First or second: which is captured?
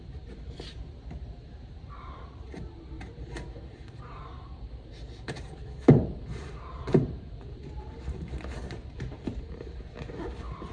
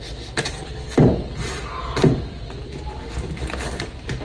second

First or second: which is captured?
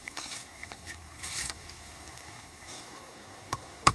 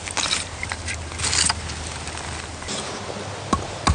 second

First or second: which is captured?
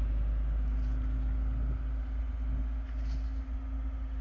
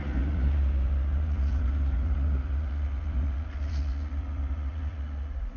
first